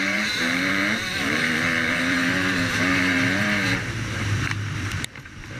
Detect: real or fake fake